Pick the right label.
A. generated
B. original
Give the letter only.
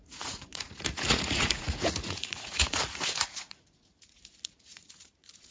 A